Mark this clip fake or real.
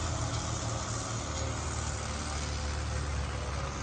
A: real